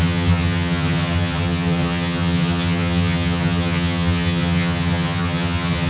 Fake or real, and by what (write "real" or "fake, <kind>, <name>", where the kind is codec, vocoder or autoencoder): fake, vocoder, HiFi-GAN